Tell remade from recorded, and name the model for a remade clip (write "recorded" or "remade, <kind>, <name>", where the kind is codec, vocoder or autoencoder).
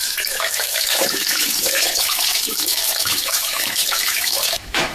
remade, autoencoder, DAC-VAE